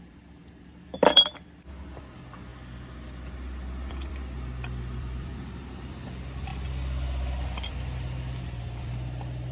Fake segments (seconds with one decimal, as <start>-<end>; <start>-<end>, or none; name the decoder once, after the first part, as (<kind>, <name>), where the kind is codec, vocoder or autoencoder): 0.0-2.5 (vocoder, BigVGAN v2); 3.9-6.5; 7.7-9.5